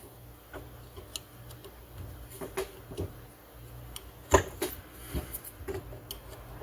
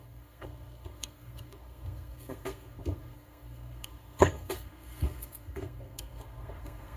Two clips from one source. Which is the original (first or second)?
first